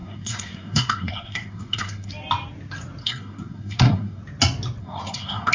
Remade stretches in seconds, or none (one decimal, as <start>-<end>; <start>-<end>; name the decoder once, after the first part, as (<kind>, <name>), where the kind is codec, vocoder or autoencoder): 0.0-2.1 (codec, SNAC); 3.0-4.2; 4.8-5.5